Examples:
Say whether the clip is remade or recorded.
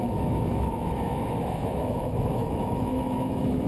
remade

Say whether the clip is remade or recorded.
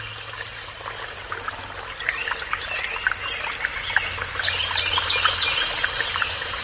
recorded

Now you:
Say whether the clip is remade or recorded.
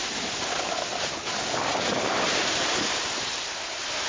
recorded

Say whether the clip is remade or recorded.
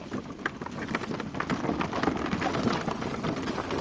recorded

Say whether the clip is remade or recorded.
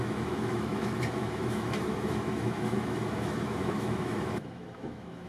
remade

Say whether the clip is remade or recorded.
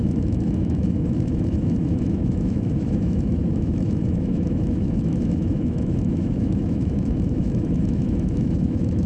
remade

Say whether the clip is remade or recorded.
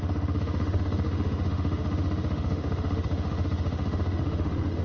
remade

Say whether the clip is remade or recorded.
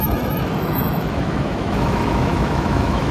remade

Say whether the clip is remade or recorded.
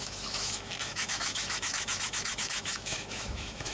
remade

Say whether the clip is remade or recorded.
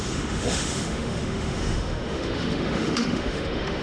remade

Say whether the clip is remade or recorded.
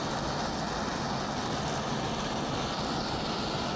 recorded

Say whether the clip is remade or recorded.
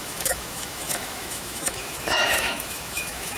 remade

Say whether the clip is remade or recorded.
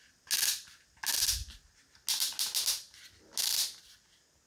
recorded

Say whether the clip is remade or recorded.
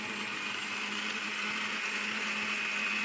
recorded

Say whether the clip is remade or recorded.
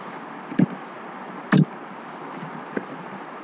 recorded